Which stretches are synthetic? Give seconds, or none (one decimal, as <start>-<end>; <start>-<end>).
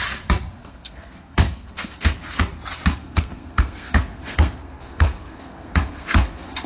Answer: 0.6-2.4; 3.0-6.7